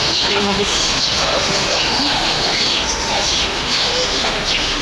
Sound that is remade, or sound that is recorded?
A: remade